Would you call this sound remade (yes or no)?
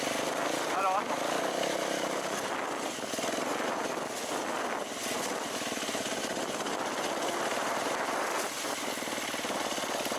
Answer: no